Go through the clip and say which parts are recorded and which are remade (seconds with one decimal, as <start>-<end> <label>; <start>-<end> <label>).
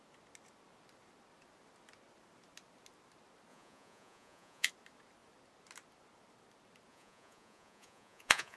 0.0-3.5 recorded; 3.5-4.7 remade; 4.7-6.9 recorded; 6.9-8.6 remade